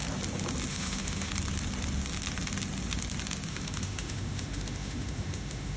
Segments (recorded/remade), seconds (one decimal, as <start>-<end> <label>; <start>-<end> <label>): 0.0-0.7 recorded; 0.7-1.3 remade; 1.3-3.5 recorded; 3.5-5.8 remade